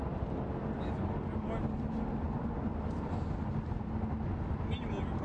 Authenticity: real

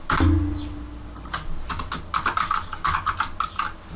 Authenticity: real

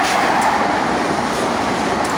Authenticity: fake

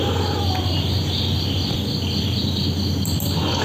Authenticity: real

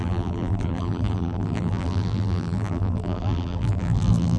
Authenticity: fake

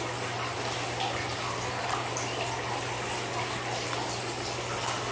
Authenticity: real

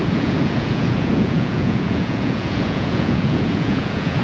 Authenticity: fake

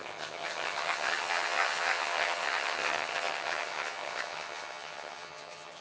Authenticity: fake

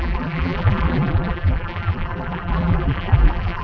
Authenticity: fake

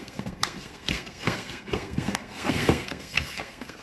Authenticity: fake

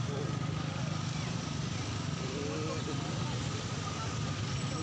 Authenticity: real